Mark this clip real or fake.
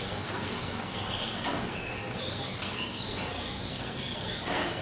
fake